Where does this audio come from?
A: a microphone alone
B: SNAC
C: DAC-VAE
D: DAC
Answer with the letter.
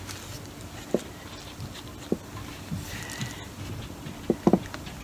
A